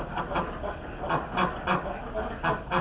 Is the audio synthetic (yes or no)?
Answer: no